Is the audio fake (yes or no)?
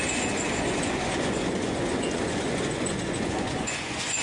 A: yes